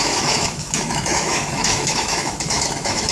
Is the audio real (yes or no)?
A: no